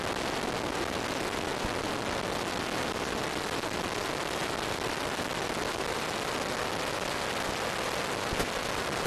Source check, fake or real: real